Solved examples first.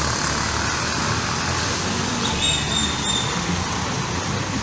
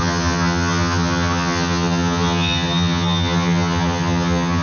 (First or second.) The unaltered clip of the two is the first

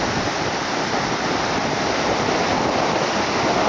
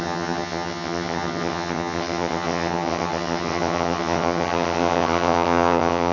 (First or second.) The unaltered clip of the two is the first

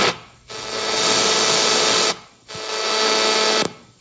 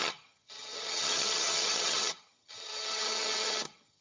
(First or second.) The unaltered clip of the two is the first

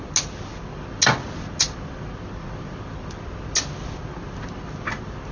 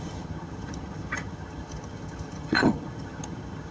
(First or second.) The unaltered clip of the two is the first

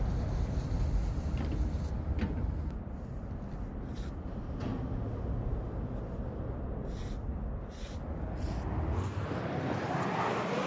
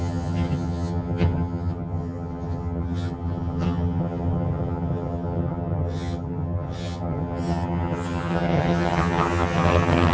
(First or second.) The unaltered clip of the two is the first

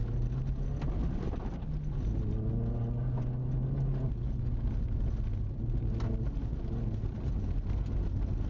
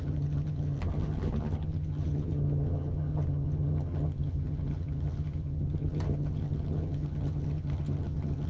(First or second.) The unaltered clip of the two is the first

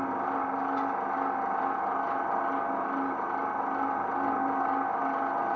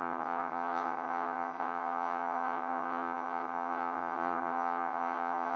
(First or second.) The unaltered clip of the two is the first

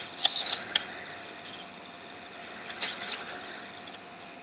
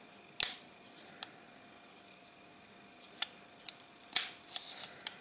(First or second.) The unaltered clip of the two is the second